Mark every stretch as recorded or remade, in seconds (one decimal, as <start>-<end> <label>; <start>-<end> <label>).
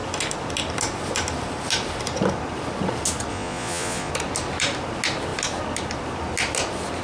0.0-3.3 recorded; 3.3-4.1 remade; 4.1-7.0 recorded